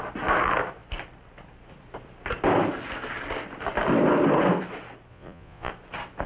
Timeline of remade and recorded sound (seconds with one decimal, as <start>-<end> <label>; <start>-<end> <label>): 0.0-5.1 recorded; 5.1-5.7 remade; 5.7-6.3 recorded